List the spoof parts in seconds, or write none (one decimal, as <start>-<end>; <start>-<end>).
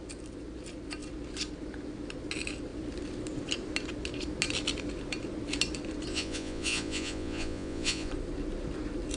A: 6.1-8.1